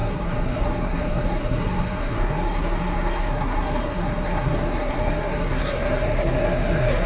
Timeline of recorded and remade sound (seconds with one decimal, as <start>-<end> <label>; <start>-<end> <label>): 0.0-7.1 remade